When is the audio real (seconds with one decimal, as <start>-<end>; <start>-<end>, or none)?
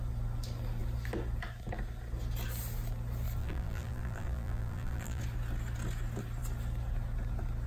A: 0.0-3.4; 5.2-7.7